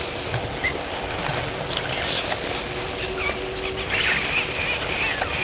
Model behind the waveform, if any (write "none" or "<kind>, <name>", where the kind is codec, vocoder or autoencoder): none